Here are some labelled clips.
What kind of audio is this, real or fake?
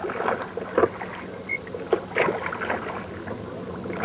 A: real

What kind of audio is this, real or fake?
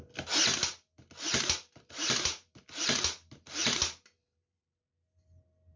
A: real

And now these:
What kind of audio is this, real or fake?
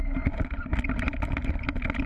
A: real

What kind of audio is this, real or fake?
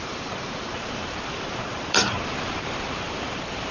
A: fake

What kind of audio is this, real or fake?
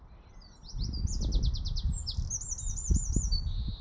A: real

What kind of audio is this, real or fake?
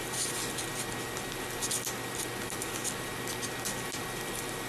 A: real